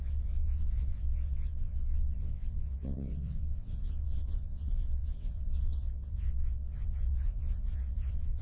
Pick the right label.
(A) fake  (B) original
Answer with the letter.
A